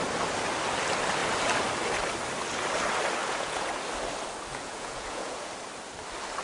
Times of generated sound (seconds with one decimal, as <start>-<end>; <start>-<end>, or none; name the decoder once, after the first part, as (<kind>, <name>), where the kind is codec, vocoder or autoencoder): 3.2-3.7 (vocoder, Vocos); 4.5-5.5